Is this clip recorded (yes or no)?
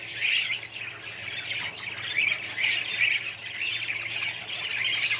yes